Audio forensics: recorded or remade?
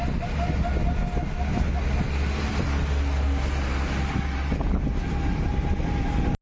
recorded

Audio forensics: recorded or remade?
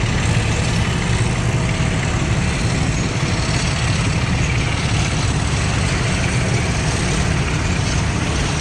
recorded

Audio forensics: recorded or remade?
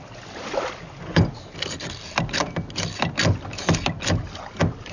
recorded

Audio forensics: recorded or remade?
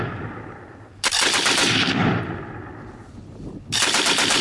recorded